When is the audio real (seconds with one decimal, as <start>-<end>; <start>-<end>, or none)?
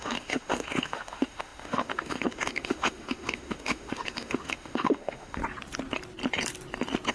5.4-7.1